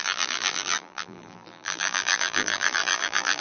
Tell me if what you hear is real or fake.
fake